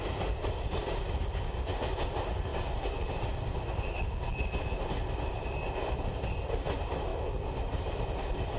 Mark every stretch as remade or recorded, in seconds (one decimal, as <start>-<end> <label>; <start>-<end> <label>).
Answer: 0.0-8.6 recorded